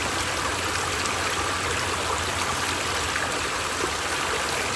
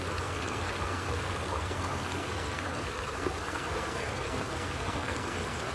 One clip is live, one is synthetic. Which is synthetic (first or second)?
second